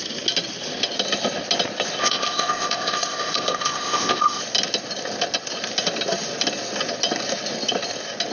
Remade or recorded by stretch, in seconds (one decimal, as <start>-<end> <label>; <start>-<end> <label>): 0.0-2.0 recorded; 2.0-4.4 remade; 4.4-8.3 recorded